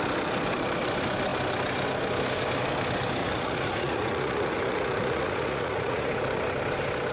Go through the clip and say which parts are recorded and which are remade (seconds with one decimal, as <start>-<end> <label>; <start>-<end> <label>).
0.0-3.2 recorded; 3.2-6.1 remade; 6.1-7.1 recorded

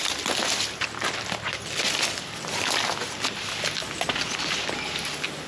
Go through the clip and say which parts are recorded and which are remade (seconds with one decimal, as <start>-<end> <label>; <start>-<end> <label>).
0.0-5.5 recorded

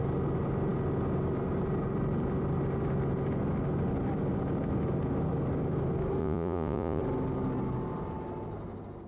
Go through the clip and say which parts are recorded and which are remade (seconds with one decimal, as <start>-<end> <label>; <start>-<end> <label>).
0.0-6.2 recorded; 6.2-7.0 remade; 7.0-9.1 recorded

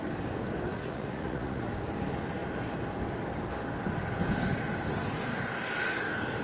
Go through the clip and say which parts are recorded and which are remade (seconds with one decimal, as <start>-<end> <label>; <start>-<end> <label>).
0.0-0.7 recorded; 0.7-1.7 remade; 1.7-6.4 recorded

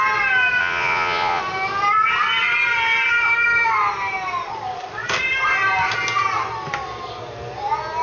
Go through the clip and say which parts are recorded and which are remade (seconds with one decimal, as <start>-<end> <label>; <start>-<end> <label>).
0.0-0.6 recorded; 0.6-1.4 remade; 1.4-8.0 recorded

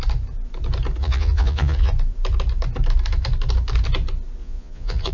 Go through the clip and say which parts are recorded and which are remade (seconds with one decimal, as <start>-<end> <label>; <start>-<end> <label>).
0.0-1.0 recorded; 1.0-1.9 remade; 1.9-4.4 recorded; 4.4-5.1 remade